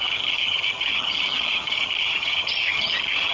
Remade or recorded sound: remade